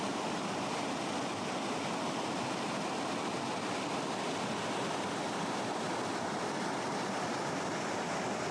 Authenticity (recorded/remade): recorded